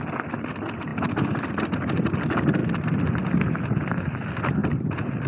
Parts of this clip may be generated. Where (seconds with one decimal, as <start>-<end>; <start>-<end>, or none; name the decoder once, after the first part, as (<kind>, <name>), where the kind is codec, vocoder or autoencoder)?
none